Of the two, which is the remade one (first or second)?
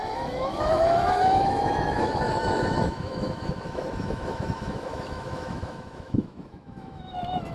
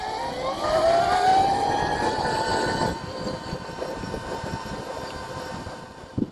first